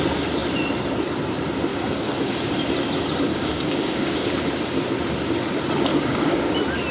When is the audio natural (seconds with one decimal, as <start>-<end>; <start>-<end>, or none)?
0.0-1.7; 2.5-3.3; 4.3-5.9; 6.5-6.9